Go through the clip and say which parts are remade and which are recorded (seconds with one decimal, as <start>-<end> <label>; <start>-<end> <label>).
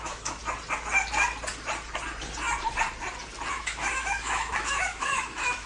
0.0-0.4 remade; 0.4-3.5 recorded; 3.5-5.7 remade